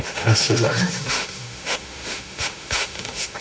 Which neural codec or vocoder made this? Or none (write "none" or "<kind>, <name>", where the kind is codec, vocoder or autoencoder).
autoencoder, DAC-VAE